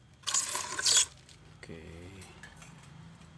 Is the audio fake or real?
real